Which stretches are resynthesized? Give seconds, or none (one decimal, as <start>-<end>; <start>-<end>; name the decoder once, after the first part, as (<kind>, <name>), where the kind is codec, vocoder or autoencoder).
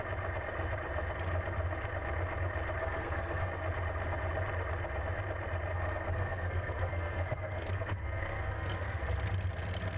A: 2.8-3.5 (codec, SNAC); 5.7-9.0